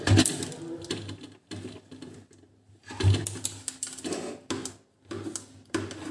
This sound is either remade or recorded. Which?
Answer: recorded